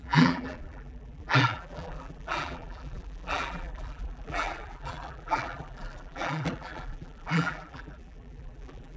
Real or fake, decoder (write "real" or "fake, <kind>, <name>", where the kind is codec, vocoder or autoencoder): fake, vocoder, BigVGAN v2